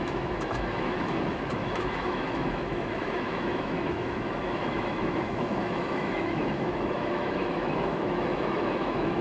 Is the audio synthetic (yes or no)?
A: yes